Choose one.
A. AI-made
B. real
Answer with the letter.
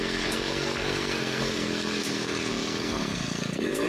A